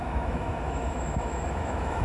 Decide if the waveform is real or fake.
fake